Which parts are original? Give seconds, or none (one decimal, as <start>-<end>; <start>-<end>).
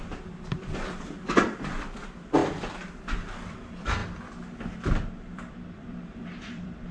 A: 4.0-5.2